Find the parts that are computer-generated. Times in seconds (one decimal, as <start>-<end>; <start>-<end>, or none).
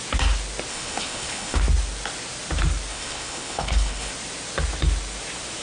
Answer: 0.7-1.6; 2.9-4.1